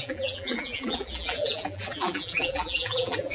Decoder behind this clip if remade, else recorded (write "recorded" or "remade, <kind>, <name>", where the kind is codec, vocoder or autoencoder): remade, vocoder, BigVGAN v2